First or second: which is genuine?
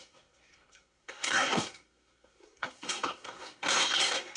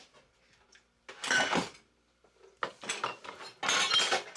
second